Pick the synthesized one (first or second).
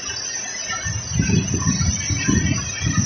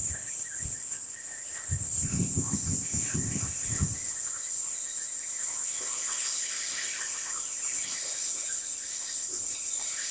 second